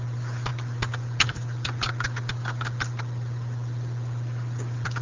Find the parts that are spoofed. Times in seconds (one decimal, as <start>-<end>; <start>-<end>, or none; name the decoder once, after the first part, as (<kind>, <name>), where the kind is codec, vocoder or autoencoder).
none